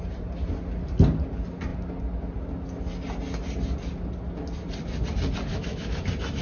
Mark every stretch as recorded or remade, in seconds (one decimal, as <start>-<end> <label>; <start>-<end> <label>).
0.0-5.5 recorded; 5.5-6.0 remade; 6.0-6.4 recorded